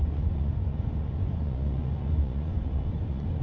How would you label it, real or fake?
fake